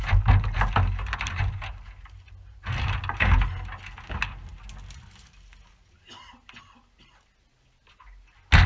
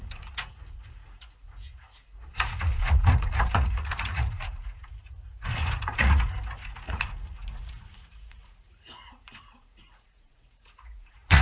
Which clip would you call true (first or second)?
first